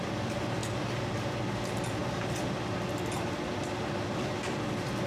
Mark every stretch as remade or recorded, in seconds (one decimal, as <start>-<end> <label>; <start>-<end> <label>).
0.0-0.6 remade; 0.6-1.5 recorded; 1.5-2.0 remade; 2.0-4.3 recorded; 4.3-5.1 remade